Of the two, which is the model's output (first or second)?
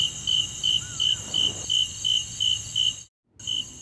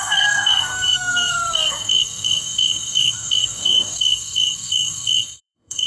second